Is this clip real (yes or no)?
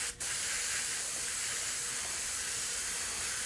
no